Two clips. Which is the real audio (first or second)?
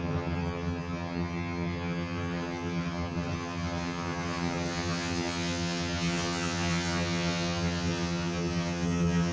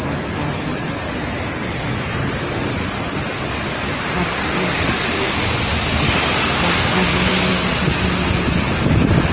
second